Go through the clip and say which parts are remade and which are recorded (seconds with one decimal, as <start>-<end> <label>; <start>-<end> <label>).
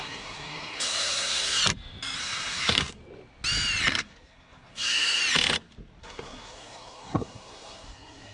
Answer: 0.0-1.6 remade; 1.6-2.2 recorded; 2.2-3.0 remade; 3.0-3.9 recorded; 3.9-5.2 remade; 5.2-6.0 recorded; 6.0-8.3 remade